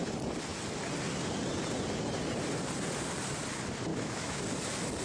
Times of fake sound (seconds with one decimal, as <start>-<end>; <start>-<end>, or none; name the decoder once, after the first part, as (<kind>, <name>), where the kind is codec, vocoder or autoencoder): 3.9-4.4 (autoencoder, DAC-VAE)